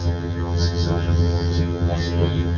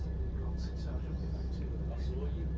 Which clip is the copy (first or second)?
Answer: first